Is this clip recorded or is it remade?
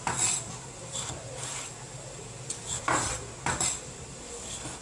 recorded